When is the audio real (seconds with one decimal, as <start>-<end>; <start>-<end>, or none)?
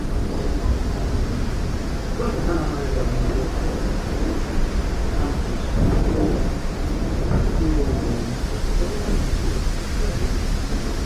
0.0-11.1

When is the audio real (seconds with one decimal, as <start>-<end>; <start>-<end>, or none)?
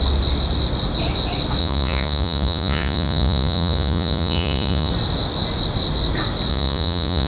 0.0-1.6; 4.9-6.5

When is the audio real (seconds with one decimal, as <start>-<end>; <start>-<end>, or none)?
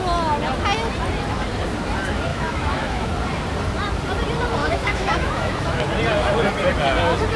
0.0-2.3; 3.1-4.6; 5.9-7.4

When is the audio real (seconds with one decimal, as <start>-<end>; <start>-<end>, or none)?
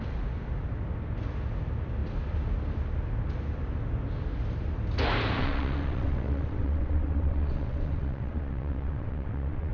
0.0-5.4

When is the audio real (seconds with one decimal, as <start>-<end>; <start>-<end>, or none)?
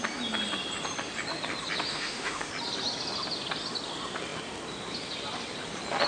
0.0-1.9; 2.5-6.1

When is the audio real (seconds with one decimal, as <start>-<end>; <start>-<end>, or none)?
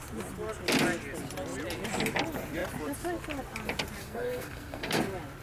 0.0-4.0; 5.0-5.4